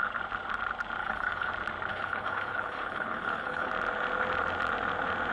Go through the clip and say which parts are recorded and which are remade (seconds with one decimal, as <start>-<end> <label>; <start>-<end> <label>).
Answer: 0.0-1.0 recorded; 1.0-1.5 remade; 1.5-1.9 recorded; 1.9-3.7 remade; 3.7-5.3 recorded